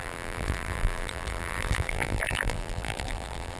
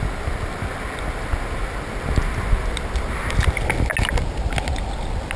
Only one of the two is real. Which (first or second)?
second